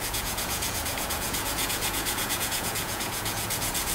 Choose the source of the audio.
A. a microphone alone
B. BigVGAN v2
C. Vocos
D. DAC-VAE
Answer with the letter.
C